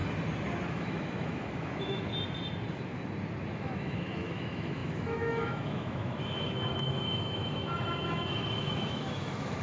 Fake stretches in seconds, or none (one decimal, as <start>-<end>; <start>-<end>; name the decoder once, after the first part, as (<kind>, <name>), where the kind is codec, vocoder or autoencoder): 0.7-2.1 (autoencoder, DAC-VAE); 3.5-9.6